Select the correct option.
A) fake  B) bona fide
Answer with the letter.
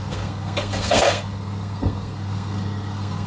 A